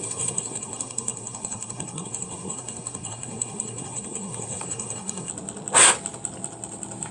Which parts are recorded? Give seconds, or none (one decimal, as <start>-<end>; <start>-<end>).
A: 5.3-7.1